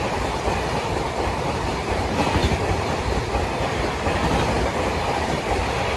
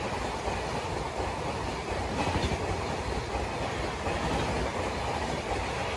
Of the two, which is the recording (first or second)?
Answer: second